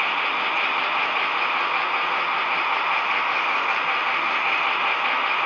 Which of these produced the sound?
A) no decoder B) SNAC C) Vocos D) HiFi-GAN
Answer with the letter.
A